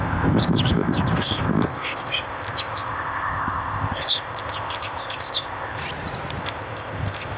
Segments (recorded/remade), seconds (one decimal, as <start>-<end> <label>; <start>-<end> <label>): 0.0-5.8 remade; 5.8-6.4 recorded; 6.4-7.4 remade